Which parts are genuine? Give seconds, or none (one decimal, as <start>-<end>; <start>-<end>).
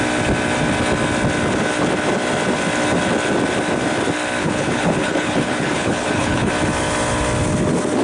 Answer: 0.0-4.4; 6.5-8.0